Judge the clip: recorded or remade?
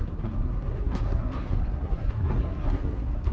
remade